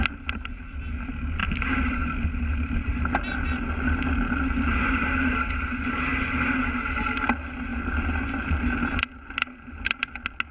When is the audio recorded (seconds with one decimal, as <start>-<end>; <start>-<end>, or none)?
0.0-1.4; 2.9-10.5